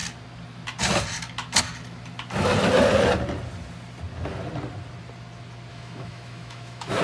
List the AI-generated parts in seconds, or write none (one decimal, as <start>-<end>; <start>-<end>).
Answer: 5.7-7.0